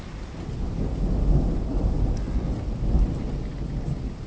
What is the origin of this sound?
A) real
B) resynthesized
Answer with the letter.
A